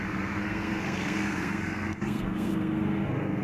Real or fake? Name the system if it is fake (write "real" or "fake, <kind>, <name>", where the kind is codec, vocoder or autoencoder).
fake, codec, SNAC